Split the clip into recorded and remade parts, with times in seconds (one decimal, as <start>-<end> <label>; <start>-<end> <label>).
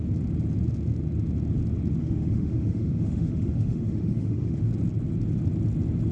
0.0-2.0 recorded; 2.0-4.7 remade; 4.7-6.1 recorded